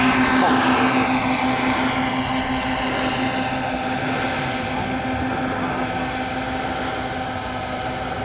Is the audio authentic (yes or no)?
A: yes